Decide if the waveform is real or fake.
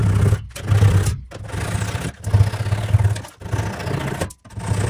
real